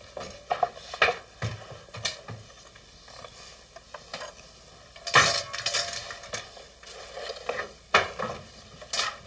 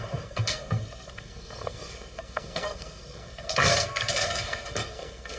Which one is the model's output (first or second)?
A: second